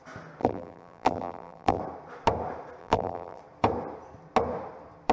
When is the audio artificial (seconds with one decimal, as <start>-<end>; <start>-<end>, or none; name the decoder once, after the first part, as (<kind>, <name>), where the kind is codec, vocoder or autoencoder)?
0.4-1.8 (vocoder, BigVGAN v2); 2.8-3.4